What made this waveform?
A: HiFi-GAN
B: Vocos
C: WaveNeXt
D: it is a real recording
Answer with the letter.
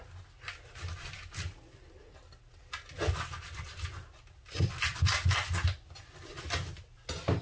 D